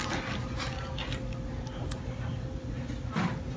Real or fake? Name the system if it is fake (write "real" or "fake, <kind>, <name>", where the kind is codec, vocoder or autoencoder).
real